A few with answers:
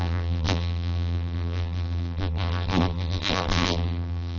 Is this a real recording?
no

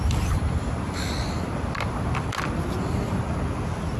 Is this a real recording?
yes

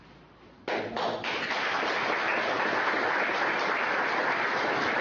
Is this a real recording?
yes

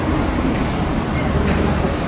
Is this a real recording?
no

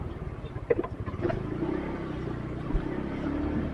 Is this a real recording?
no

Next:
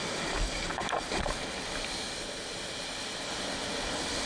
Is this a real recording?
yes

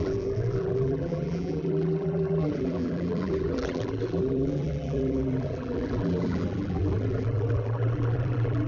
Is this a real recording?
no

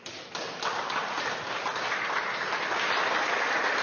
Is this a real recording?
yes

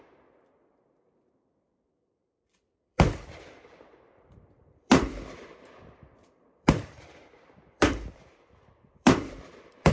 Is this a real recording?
no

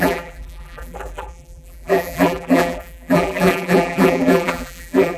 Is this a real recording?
no